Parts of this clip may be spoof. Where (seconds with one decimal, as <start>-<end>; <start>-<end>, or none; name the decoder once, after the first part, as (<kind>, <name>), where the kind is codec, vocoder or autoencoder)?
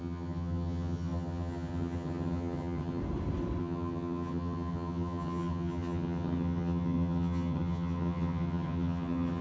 0.0-3.0 (vocoder, HiFi-GAN); 3.6-9.4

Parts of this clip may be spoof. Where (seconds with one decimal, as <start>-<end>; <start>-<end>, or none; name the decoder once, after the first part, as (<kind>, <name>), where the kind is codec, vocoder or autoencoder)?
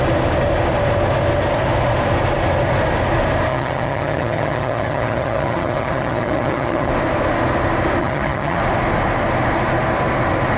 3.5-6.9 (vocoder, HiFi-GAN); 8.0-8.6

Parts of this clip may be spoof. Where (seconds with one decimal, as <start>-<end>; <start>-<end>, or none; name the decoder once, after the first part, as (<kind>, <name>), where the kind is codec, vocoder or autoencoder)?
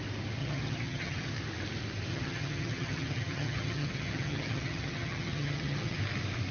0.4-1.3 (vocoder, HiFi-GAN); 2.1-6.0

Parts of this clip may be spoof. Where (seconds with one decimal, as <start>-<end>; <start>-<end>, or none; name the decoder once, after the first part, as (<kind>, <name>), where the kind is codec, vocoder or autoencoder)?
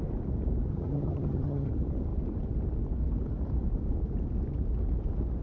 0.7-1.7 (vocoder, HiFi-GAN)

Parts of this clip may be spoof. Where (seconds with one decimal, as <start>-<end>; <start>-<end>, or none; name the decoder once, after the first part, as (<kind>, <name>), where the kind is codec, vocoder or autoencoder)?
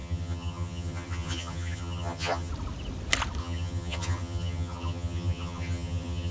0.0-2.5 (vocoder, HiFi-GAN); 3.4-6.3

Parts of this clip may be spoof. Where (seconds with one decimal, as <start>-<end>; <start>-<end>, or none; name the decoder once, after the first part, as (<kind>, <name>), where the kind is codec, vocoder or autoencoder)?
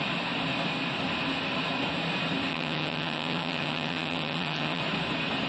2.5-4.8 (vocoder, HiFi-GAN)